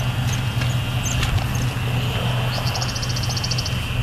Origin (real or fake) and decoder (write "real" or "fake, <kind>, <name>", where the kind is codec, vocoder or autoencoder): real